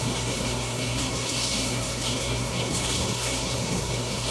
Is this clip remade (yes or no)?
yes